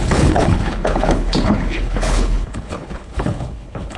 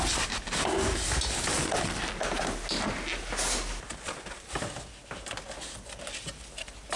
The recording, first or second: second